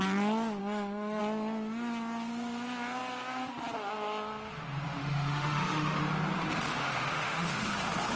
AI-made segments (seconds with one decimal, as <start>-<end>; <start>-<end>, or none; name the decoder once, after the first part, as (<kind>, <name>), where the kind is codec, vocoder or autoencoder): 0.6-1.2 (autoencoder, DAC-VAE); 5.0-6.0; 6.8-7.6